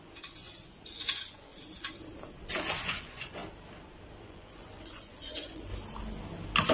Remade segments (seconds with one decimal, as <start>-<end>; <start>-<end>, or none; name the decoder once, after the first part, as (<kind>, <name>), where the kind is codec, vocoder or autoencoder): 0.0-1.5 (vocoder, Vocos); 2.8-3.4; 4.2-5.7